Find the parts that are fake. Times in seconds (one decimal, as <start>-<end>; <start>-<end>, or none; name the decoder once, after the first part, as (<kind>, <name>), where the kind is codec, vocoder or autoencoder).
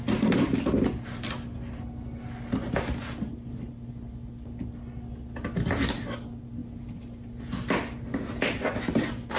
none